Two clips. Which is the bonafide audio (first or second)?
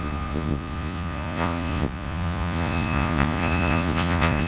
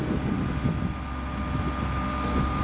second